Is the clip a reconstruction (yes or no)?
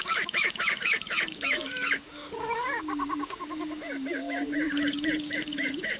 yes